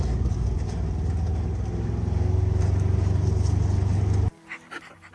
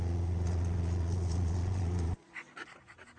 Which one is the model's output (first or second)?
second